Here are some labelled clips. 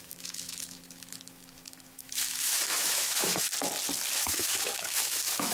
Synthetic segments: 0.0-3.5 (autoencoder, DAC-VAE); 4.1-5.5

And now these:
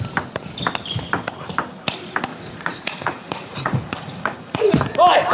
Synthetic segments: 2.3-4.7 (vocoder, Vocos)

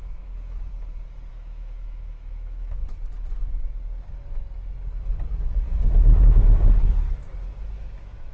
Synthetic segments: 0.0-0.7 (autoencoder, DAC-VAE); 1.3-2.8; 7.8-8.3

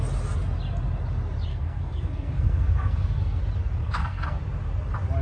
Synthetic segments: 1.5-3.4 (codec, SNAC); 3.8-4.4

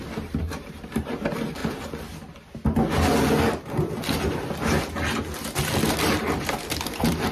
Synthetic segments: 0.0-1.6 (vocoder, BigVGAN v2); 6.0-7.3

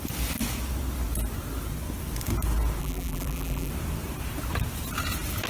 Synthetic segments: 2.8-3.7 (vocoder, BigVGAN v2)

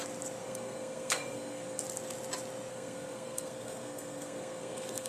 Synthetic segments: 0.4-1.8 (codec, SNAC); 2.7-5.1

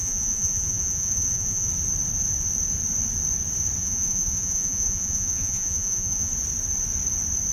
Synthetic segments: 0.0-1.7 (vocoder, Vocos); 3.8-6.3